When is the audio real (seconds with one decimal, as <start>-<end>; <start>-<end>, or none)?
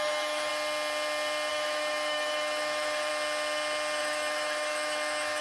0.5-1.5; 3.1-4.0